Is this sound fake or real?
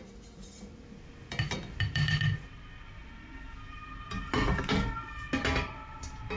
fake